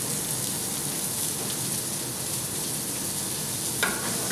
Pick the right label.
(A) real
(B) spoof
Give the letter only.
A